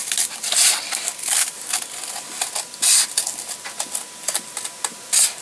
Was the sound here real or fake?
real